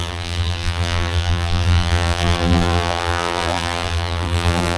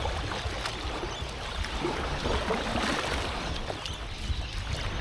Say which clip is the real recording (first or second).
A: second